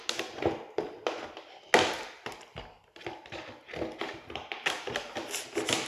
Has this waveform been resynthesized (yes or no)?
no